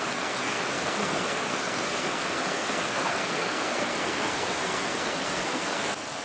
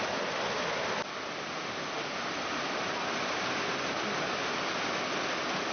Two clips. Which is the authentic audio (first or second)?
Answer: second